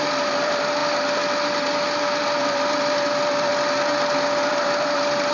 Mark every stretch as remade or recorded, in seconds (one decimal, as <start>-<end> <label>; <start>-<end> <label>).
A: 0.0-0.8 remade; 0.8-2.4 recorded; 2.4-3.5 remade; 3.5-4.5 recorded; 4.5-5.3 remade